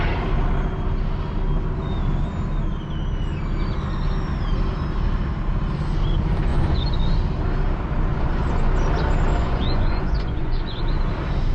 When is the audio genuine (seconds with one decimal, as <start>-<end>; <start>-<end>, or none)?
0.0-6.5; 7.1-8.1; 8.7-9.3; 10.8-11.5